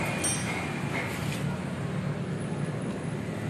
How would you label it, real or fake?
real